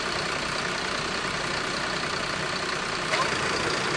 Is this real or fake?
real